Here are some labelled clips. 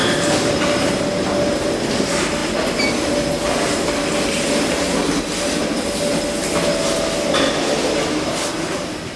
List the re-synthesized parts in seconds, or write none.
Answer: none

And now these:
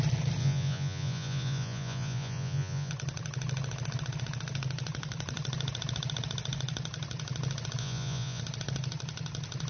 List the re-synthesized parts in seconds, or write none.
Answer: 0.4-2.9; 7.8-8.4